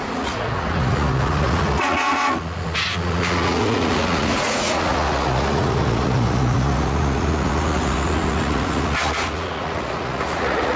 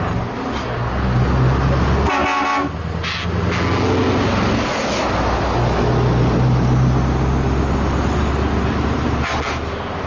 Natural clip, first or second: second